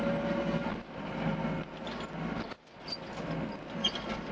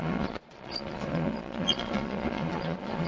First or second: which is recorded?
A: first